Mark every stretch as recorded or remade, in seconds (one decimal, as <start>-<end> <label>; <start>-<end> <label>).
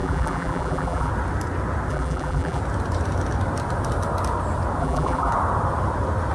0.0-1.1 remade; 1.1-1.9 recorded; 1.9-2.6 remade; 2.6-4.8 recorded; 4.8-5.3 remade; 5.3-6.3 recorded